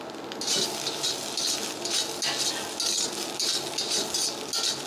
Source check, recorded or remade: recorded